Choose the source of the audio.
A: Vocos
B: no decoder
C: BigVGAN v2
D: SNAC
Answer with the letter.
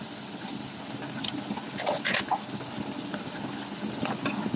B